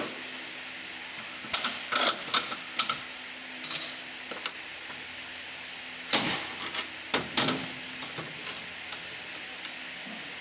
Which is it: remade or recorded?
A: recorded